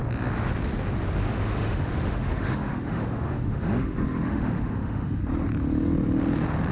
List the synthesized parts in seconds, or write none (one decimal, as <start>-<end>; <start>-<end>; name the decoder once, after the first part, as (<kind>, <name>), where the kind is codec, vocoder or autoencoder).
1.2-5.2 (autoencoder, DAC-VAE)